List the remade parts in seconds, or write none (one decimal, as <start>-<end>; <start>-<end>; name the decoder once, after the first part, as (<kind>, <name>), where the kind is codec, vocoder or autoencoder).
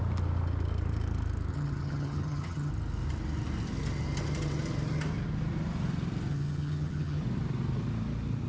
1.5-2.7 (vocoder, HiFi-GAN); 6.3-7.2